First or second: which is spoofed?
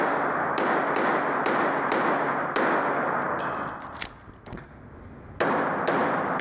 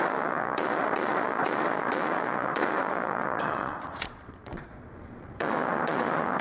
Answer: second